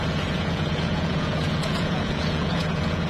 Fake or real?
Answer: fake